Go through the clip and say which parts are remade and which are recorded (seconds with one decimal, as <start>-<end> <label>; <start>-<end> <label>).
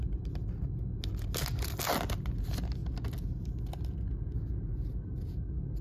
0.0-5.8 recorded